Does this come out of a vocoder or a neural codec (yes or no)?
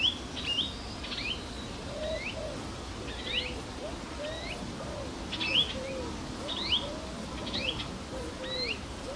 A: no